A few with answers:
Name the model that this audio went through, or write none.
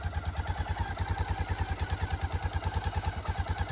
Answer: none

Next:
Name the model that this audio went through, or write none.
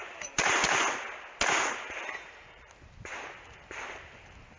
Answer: none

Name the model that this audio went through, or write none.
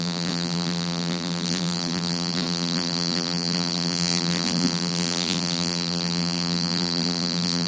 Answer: vocoder, BigVGAN v2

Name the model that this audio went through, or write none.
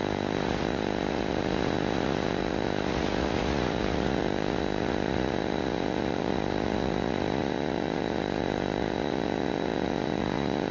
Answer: vocoder, Vocos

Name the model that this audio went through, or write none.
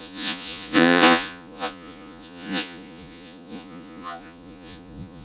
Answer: vocoder, Vocos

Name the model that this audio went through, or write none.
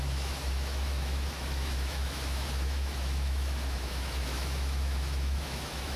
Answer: autoencoder, DAC-VAE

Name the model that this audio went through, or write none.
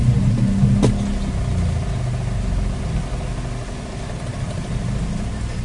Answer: none